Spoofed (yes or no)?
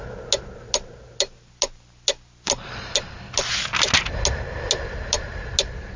no